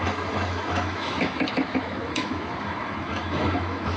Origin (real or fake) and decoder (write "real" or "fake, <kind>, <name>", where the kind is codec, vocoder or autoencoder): fake, autoencoder, DAC-VAE